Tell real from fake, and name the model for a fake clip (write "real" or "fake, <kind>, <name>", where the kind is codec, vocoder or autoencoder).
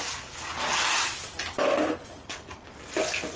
real